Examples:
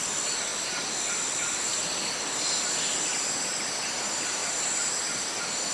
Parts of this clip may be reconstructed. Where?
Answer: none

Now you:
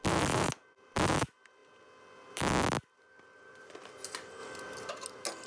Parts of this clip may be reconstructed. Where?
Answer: none